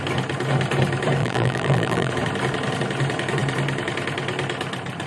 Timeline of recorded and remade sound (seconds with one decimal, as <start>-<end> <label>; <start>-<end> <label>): 0.0-1.2 recorded; 1.2-2.1 remade; 2.1-5.1 recorded